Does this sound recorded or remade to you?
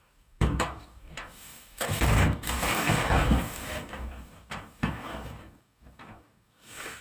remade